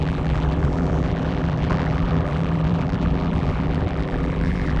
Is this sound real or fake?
fake